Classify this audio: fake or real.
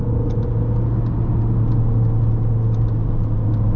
real